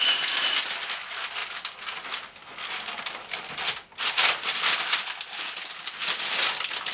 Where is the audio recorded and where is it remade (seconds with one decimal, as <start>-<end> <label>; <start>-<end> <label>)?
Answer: 0.0-6.9 recorded